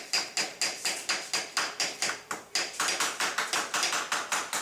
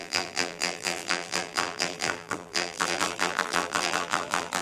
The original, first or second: first